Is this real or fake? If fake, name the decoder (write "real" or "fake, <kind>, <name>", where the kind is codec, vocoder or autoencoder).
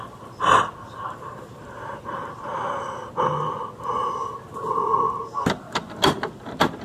real